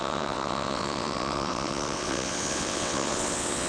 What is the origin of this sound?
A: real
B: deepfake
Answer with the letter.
B